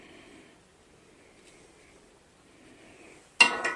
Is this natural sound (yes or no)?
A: yes